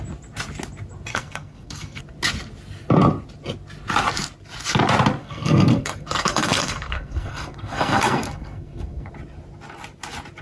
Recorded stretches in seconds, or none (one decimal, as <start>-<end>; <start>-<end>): 0.0-1.1; 2.0-5.2; 9.1-10.4